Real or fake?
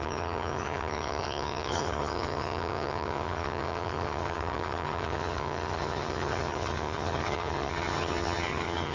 fake